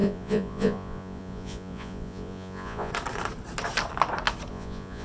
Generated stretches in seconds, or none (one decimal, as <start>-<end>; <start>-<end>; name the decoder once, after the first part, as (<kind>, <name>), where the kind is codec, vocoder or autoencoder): 0.0-2.9 (vocoder, Vocos); 4.5-5.0